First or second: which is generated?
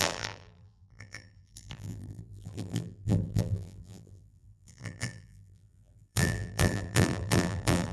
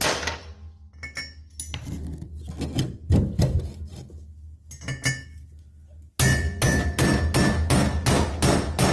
first